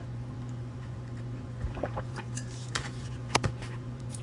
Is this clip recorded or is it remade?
remade